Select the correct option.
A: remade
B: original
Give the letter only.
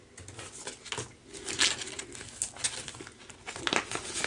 B